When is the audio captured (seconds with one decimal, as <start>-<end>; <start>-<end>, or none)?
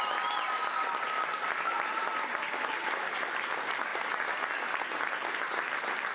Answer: 0.0-6.1